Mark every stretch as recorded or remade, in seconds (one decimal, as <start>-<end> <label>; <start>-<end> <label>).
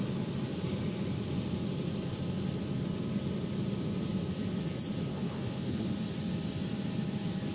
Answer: 0.0-5.1 recorded; 5.1-5.9 remade; 5.9-7.5 recorded